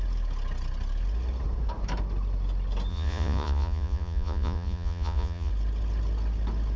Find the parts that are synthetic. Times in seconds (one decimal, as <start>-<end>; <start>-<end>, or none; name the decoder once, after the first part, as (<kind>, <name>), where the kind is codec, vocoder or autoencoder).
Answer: 2.9-5.5 (vocoder, Vocos)